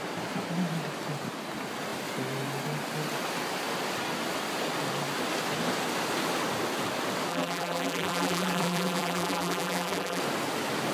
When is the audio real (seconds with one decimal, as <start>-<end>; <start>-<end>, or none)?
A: 0.0-7.3; 10.2-10.9